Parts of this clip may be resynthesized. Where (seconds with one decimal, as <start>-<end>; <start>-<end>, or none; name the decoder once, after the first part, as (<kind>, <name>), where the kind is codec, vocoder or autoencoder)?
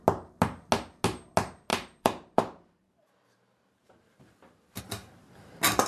1.7-4.8 (vocoder, BigVGAN v2)